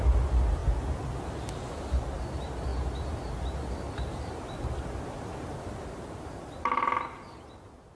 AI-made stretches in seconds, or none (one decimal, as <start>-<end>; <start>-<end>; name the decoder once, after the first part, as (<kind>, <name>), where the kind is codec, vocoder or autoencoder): 2.7-7.5 (vocoder, BigVGAN v2)